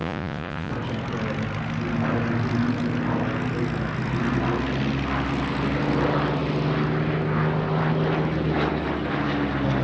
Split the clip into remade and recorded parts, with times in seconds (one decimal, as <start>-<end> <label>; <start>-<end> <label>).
0.0-0.7 remade; 0.7-9.8 recorded